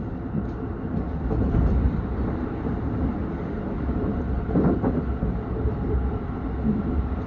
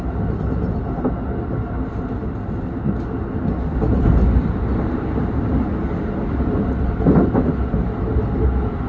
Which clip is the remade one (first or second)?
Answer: first